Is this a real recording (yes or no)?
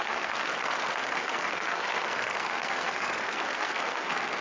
no